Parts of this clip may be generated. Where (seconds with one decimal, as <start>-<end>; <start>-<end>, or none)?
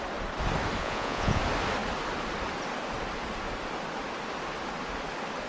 0.8-1.4